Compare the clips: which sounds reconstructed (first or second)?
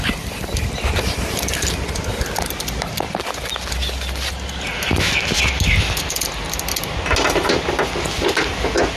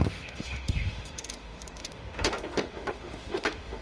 second